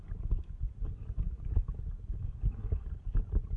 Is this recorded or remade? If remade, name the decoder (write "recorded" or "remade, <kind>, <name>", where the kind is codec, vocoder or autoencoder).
recorded